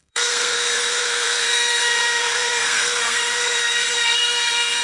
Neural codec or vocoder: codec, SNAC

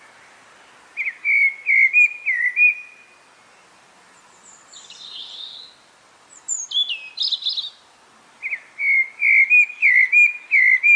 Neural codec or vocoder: none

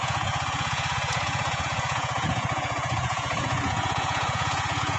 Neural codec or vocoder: vocoder, Vocos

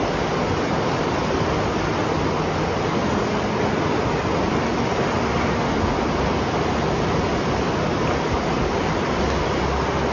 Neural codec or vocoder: none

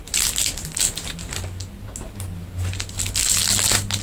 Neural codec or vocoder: none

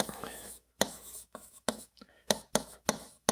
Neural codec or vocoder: autoencoder, DAC-VAE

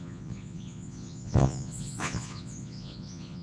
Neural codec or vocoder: vocoder, Vocos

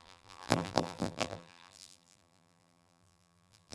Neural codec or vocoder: vocoder, BigVGAN v2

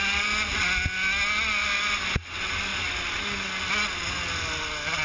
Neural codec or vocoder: none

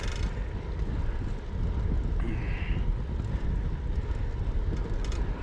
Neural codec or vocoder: none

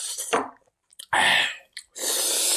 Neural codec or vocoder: none